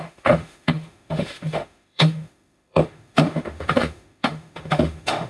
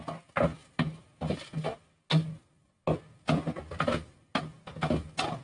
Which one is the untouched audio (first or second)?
second